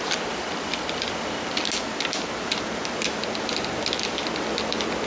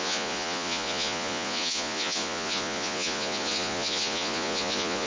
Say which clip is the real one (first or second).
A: first